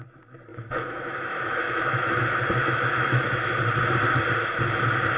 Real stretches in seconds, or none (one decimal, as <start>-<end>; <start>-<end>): 0.0-0.5; 3.6-5.2